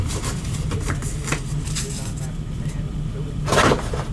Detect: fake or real real